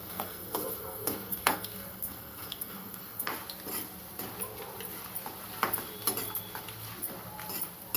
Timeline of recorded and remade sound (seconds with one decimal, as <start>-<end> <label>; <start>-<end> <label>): 0.0-3.3 remade; 3.3-8.0 recorded